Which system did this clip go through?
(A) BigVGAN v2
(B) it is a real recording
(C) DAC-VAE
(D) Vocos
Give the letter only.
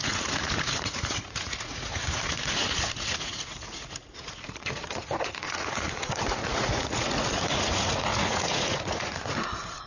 D